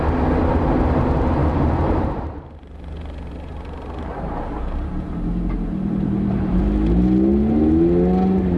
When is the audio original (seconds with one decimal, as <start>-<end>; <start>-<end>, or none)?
0.0-1.4; 6.6-8.6